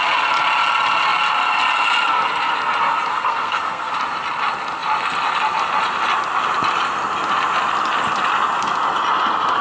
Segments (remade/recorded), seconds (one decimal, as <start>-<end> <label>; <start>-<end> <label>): 0.0-3.1 recorded; 3.1-3.9 remade; 3.9-9.6 recorded

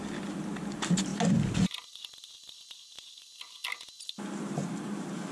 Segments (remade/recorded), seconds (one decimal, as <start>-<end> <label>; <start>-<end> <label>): 0.0-5.3 recorded